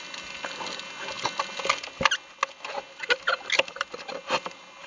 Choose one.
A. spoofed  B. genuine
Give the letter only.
B